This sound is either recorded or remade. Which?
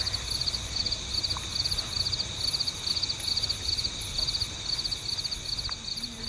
recorded